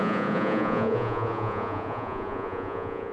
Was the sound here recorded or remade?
remade